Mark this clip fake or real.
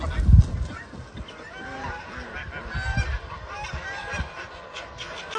real